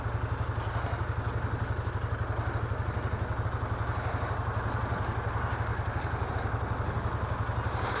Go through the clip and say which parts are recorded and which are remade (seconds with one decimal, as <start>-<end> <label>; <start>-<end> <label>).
0.0-5.7 recorded; 5.7-6.3 remade; 6.3-8.0 recorded

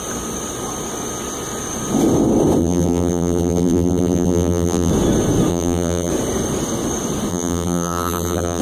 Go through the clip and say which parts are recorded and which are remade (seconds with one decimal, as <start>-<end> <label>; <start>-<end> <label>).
0.0-2.6 recorded; 2.6-4.9 remade; 4.9-5.5 recorded; 5.5-6.1 remade; 6.1-7.3 recorded; 7.3-8.6 remade